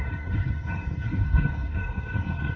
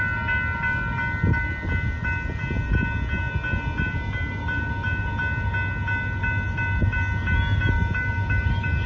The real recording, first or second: second